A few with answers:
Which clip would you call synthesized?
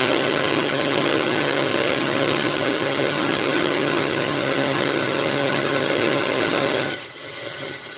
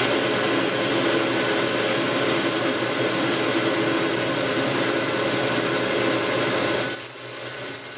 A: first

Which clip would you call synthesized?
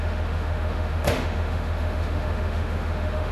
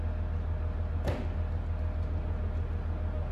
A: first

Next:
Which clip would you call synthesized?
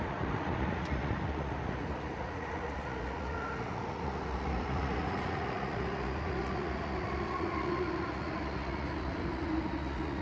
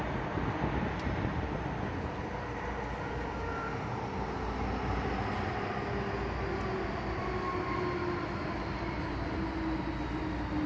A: first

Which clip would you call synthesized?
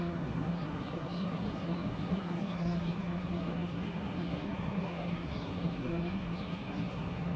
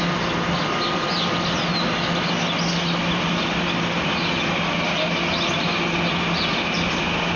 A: first